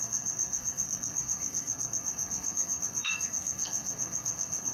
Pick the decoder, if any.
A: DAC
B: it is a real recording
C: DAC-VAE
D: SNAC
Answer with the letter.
D